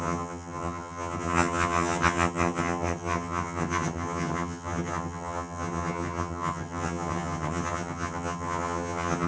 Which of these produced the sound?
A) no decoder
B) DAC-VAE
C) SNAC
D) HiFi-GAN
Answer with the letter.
D